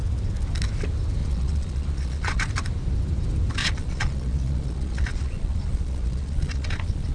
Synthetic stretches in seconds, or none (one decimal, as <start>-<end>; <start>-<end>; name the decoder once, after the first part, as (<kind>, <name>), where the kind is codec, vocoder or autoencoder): 1.2-2.5 (vocoder, Vocos); 3.6-7.1